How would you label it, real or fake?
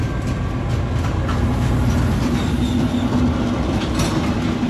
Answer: real